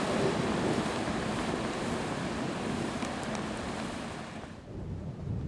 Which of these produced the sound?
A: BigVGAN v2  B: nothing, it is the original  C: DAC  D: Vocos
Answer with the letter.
A